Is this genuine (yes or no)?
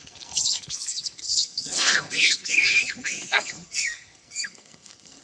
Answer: no